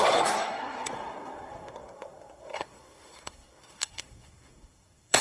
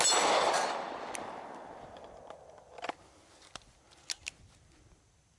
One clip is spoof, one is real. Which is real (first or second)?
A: second